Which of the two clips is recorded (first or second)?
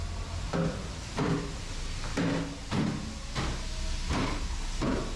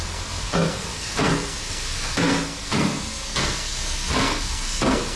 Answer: first